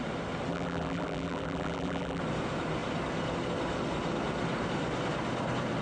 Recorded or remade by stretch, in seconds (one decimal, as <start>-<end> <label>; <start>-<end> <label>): 0.0-0.5 recorded; 0.5-2.2 remade; 2.2-5.8 recorded